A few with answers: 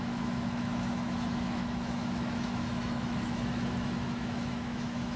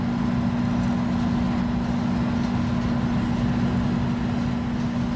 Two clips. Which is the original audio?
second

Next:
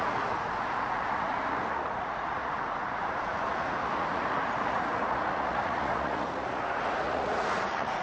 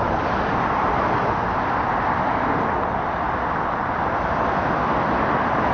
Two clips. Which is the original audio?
second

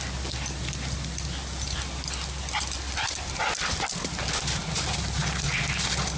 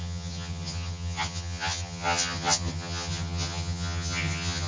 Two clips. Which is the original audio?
first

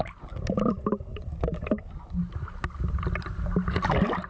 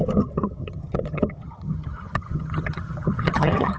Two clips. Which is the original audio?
first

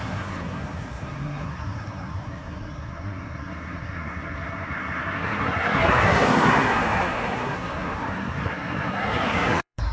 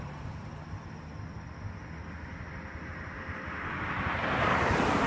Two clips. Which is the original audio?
second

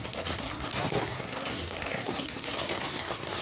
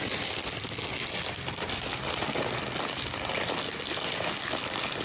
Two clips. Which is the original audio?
second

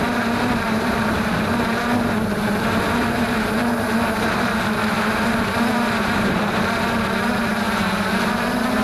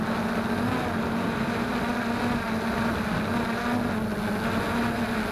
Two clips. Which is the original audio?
second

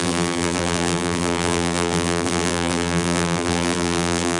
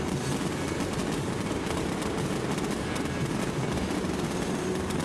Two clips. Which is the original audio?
second